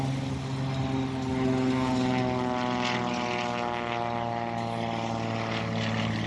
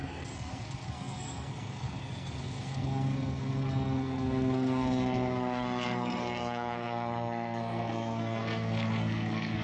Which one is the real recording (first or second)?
first